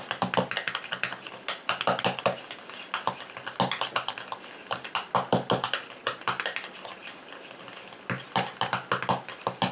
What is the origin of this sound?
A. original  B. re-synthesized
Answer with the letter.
A